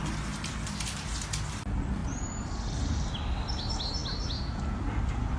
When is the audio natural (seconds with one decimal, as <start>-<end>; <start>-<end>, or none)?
0.0-5.4